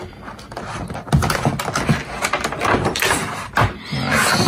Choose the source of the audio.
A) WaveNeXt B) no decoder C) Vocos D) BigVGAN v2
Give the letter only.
B